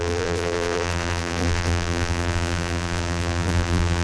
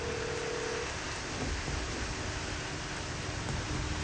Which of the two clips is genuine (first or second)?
second